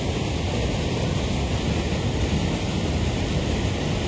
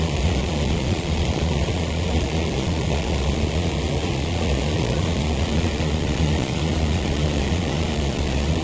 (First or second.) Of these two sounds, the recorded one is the first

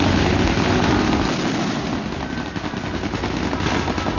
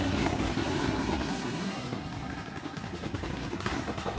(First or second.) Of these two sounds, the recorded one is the first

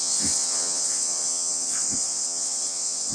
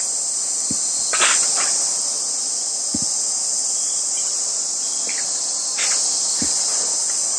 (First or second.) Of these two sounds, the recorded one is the second